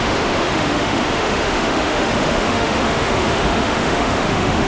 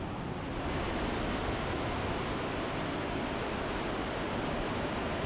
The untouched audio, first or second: second